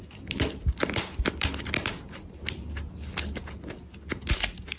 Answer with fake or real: real